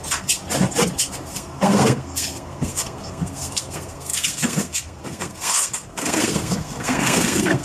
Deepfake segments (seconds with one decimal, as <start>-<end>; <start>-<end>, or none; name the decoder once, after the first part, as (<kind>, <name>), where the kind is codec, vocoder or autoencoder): 0.0-0.4 (codec, SNAC); 1.0-7.6

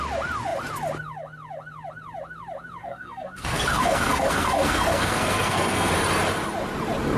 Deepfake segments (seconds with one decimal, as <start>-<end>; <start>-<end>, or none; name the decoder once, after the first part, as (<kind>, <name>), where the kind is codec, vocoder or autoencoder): 2.8-5.9 (codec, SNAC)

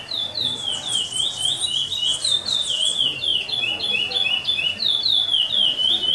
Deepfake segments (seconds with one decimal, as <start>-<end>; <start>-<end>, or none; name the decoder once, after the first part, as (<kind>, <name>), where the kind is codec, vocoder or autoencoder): none

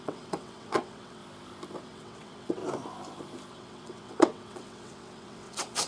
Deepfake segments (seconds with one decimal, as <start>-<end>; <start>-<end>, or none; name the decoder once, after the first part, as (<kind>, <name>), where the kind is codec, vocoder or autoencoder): 0.0-1.2 (vocoder, WaveNeXt); 1.8-2.6; 3.5-5.9

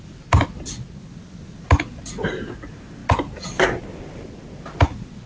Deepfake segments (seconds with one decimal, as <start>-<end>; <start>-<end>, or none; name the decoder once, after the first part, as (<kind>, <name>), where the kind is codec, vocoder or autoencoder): none

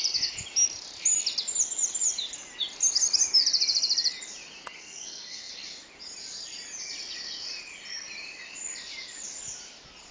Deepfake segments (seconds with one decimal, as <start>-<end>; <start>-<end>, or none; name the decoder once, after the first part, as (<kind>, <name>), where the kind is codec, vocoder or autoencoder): 4.8-5.5 (codec, SNAC)

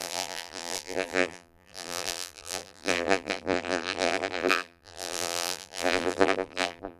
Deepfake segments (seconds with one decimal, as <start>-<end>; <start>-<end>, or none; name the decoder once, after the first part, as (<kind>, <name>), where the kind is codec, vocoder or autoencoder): 0.0-7.0 (vocoder, BigVGAN v2)